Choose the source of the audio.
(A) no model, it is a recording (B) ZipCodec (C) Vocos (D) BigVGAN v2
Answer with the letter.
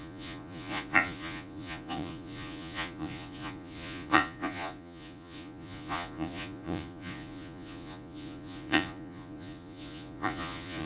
C